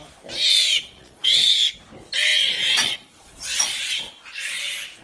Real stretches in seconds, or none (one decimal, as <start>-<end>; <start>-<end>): 0.0-0.5; 1.6-2.3; 4.6-5.0